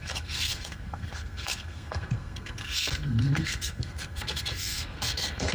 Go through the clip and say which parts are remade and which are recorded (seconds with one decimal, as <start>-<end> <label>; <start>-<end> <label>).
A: 0.0-5.5 remade